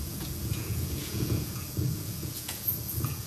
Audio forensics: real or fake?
fake